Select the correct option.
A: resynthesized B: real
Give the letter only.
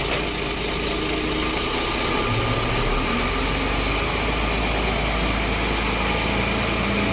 B